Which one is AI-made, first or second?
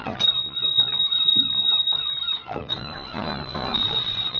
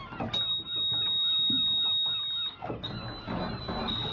first